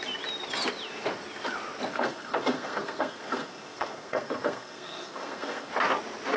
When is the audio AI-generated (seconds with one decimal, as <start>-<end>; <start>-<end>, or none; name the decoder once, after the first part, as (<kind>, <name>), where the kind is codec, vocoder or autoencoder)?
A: 1.9-5.7 (codec, SNAC)